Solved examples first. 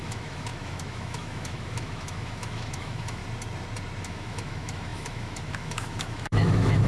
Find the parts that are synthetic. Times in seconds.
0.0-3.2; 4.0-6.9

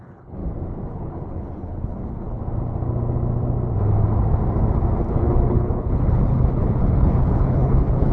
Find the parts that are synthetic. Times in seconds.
0.0-0.4; 0.9-2.4; 5.1-8.1

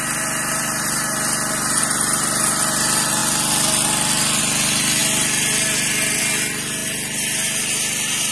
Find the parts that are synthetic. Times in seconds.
none